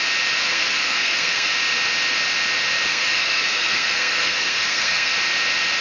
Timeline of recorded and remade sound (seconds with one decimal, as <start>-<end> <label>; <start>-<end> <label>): 0.0-0.4 recorded; 0.4-1.5 remade; 1.5-2.9 recorded; 2.9-5.1 remade; 5.1-5.8 recorded